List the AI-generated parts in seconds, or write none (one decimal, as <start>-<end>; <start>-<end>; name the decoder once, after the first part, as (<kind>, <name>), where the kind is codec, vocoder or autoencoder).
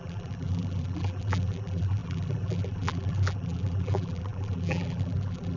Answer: 0.0-5.6 (vocoder, BigVGAN v2)